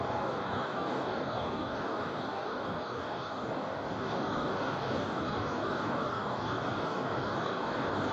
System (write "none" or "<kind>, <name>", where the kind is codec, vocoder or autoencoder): codec, DAC